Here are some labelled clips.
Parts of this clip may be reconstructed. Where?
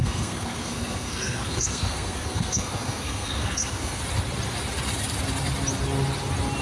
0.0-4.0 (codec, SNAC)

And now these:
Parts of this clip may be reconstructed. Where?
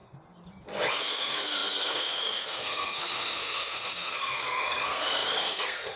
0.9-6.0 (codec, SNAC)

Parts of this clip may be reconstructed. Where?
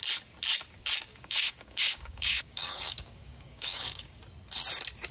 1.1-4.2 (codec, DAC)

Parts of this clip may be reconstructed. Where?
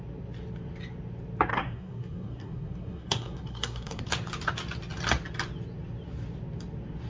1.5-4.1 (codec, SNAC)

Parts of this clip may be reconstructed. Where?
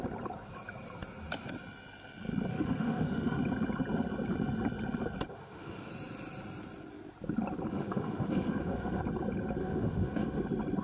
2.5-3.4 (autoencoder, DAC-VAE); 5.3-5.9; 7.7-9.0; 9.6-10.4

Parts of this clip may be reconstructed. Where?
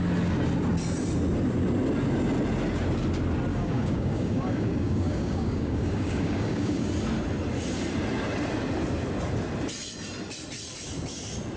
3.5-6.9 (codec, DAC)